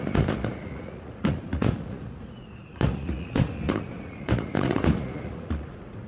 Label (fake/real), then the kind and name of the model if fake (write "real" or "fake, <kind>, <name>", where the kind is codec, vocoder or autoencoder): fake, vocoder, Vocos